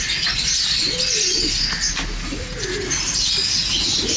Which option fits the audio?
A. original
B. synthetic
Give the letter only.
A